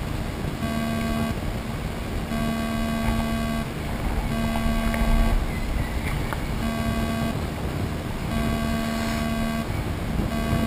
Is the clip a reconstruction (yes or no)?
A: no